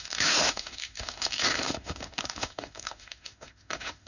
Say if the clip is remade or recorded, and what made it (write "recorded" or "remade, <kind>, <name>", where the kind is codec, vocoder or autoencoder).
remade, autoencoder, DAC-VAE